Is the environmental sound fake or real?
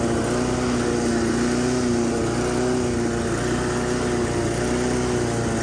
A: real